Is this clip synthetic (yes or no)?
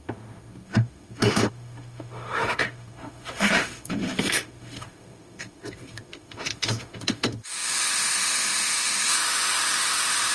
yes